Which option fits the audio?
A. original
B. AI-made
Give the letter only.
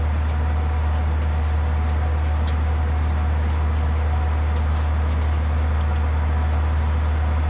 A